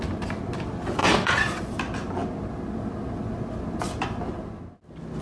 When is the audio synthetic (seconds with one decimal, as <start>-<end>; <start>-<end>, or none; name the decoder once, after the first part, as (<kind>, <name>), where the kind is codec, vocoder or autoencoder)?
1.0-1.6 (vocoder, Vocos)